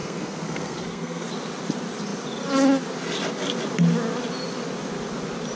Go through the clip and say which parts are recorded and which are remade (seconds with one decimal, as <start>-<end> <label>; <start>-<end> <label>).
0.0-1.3 remade; 1.3-5.6 recorded